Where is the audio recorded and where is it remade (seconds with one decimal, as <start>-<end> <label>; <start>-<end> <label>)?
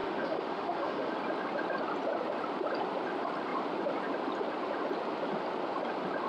0.0-1.1 remade; 1.1-6.3 recorded